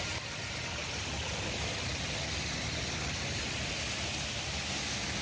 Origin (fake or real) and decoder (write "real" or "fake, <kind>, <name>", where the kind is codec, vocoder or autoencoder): real